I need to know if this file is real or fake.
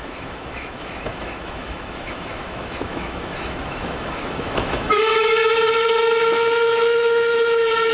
fake